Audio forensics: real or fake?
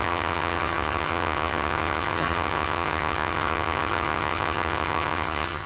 fake